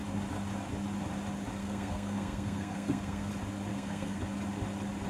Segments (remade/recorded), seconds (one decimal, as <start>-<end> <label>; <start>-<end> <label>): 0.0-1.6 recorded; 1.6-3.3 remade; 3.3-3.7 recorded; 3.7-4.2 remade; 4.2-5.1 recorded